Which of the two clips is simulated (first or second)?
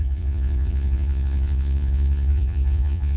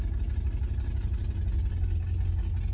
first